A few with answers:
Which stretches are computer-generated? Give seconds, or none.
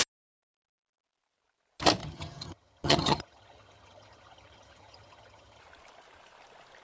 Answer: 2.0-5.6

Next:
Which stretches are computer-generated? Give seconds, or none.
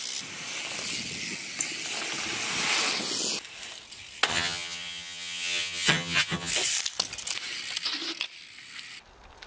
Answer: 4.3-6.5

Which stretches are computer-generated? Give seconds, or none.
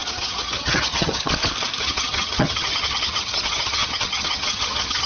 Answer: 0.0-1.3; 1.8-5.1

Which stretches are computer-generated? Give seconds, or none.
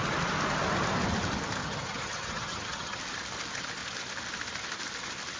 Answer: 1.6-3.0